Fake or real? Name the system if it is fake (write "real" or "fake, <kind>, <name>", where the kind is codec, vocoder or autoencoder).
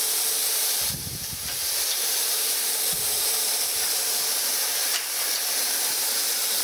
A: fake, vocoder, BigVGAN v2